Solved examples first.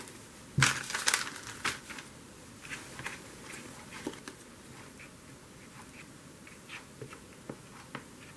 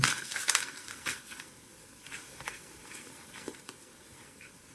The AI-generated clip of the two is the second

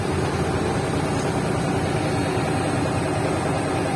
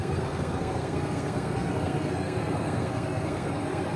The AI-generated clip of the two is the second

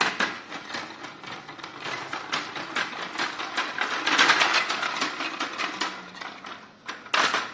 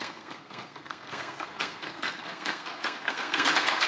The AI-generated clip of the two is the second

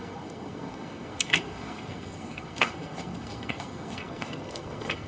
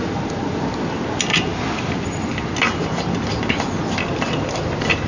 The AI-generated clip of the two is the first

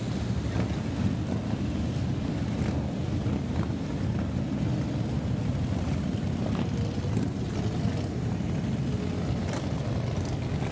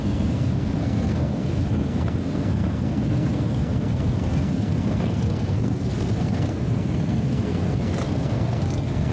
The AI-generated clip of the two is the second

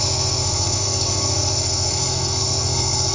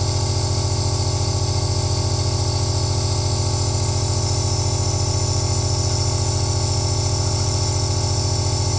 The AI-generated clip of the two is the first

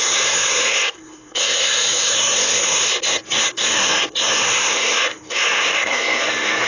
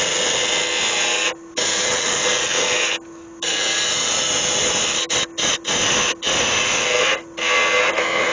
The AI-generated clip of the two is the first